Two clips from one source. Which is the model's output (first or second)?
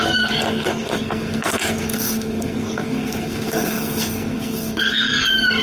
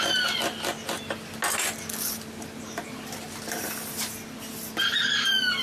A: first